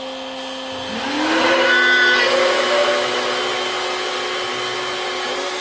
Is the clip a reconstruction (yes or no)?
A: no